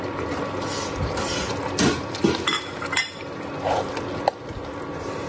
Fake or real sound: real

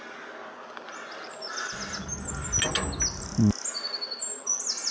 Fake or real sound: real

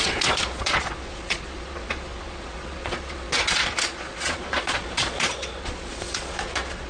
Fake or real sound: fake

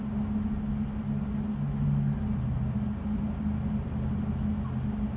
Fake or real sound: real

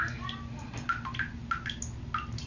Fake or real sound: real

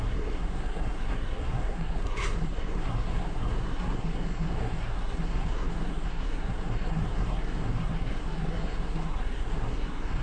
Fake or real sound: fake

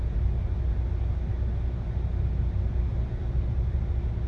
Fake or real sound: real